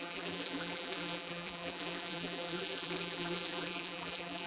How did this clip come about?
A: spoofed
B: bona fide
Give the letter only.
A